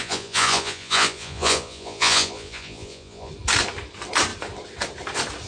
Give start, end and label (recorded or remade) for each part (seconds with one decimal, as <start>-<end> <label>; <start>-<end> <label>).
0.0-3.3 remade; 3.3-5.5 recorded